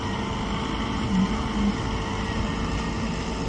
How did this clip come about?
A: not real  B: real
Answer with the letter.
B